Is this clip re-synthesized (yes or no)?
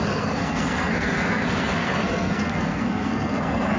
yes